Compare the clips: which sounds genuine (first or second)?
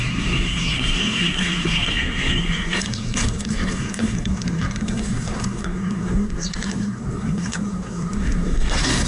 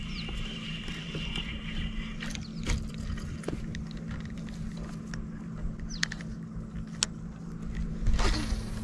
second